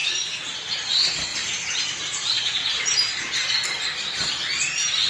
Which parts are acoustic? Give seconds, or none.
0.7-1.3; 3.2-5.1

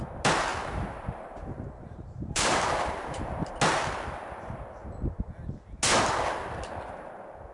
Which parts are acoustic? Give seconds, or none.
0.0-0.5; 3.5-7.5

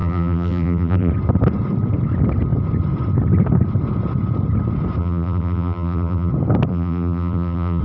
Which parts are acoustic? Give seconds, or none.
1.1-5.0; 6.3-6.7

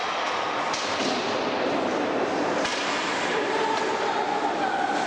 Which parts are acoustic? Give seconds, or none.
0.0-2.7; 3.6-5.1

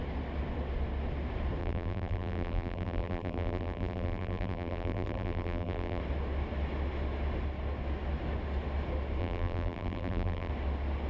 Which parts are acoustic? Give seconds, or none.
0.0-1.6; 6.0-9.2; 10.5-11.1